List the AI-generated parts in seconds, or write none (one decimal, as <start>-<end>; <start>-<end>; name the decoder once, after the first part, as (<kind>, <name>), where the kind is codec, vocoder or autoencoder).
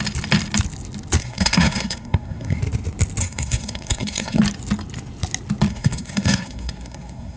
1.2-2.6 (codec, SNAC); 3.2-4.4; 5.7-7.4